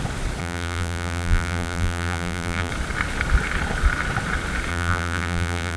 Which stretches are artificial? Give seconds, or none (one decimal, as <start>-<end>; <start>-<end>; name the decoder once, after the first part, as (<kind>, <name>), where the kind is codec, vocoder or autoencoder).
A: 0.4-2.7 (vocoder, BigVGAN v2); 4.7-5.8